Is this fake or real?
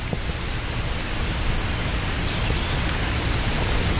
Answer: real